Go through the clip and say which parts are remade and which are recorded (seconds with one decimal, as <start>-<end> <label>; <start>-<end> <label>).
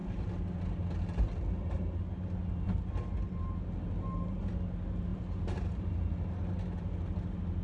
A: 0.0-5.1 recorded; 5.1-5.9 remade; 5.9-7.6 recorded